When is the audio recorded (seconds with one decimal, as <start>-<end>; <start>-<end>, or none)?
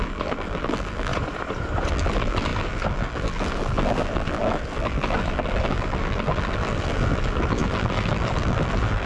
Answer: 1.1-1.9